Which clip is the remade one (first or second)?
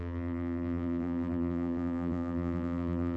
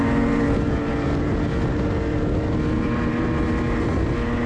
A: first